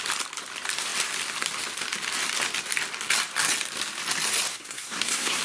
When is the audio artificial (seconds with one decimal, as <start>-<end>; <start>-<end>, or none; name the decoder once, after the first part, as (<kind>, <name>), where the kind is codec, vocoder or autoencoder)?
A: 4.5-5.4 (codec, SNAC)